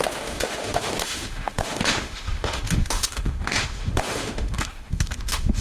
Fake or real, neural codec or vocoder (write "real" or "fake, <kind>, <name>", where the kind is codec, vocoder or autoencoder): fake, autoencoder, DAC-VAE